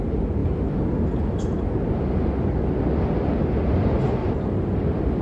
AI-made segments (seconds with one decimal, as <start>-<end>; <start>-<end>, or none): 0.4-1.2; 4.2-4.8